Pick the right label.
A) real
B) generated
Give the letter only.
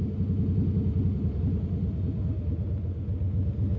A